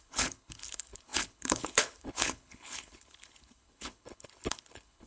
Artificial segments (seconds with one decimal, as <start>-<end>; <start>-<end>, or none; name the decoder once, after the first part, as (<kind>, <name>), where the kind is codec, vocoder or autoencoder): 0.0-5.1 (codec, HILCodec)